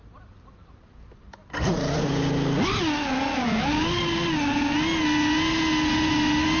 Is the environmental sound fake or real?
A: real